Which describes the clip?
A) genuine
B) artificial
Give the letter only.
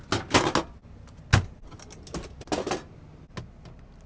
A